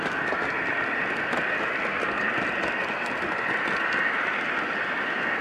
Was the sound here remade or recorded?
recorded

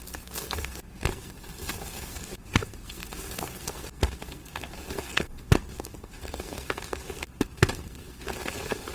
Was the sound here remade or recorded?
remade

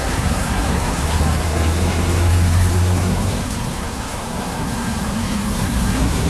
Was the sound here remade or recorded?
remade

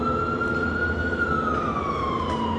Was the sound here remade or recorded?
recorded